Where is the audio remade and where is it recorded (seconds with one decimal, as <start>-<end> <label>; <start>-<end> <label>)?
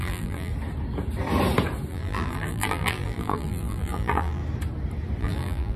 0.0-0.5 remade; 0.5-1.9 recorded; 1.9-4.4 remade; 4.4-5.2 recorded; 5.2-5.8 remade